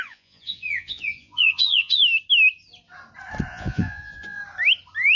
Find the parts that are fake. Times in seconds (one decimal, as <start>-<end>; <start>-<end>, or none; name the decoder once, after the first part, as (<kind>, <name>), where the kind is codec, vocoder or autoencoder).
0.0-2.0 (vocoder, Vocos); 3.5-4.4